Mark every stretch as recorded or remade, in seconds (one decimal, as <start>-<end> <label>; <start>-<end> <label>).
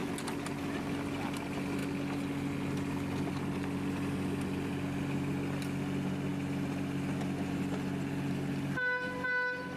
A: 0.0-9.8 recorded